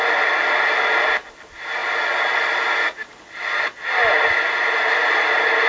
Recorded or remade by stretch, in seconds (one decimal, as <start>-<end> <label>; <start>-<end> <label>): 0.0-5.7 recorded